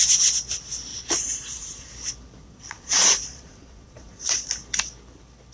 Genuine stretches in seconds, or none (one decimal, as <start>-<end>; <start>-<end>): 0.0-0.9; 1.9-2.4; 4.5-5.5